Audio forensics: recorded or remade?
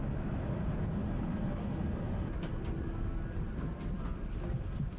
recorded